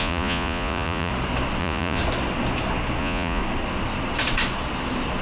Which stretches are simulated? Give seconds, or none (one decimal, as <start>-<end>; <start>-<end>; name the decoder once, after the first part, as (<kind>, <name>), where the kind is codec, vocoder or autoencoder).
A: 0.0-1.1 (vocoder, Vocos); 1.6-2.0; 3.0-3.4